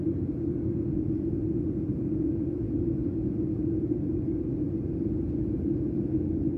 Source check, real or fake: real